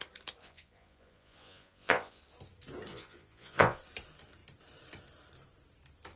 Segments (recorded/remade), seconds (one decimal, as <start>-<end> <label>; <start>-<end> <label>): 0.0-0.4 recorded; 0.4-2.2 remade; 2.2-2.9 recorded; 2.9-3.8 remade; 3.8-6.2 recorded

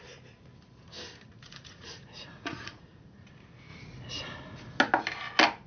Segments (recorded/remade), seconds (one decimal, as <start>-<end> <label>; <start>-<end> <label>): 0.0-1.3 recorded; 1.3-3.3 remade; 3.3-5.7 recorded

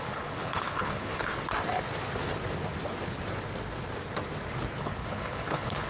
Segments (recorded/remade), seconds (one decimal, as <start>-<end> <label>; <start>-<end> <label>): 0.0-1.3 remade; 1.3-4.8 recorded; 4.8-5.9 remade

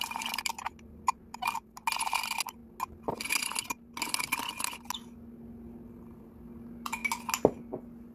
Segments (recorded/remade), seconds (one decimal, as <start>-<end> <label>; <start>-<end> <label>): 0.0-8.1 recorded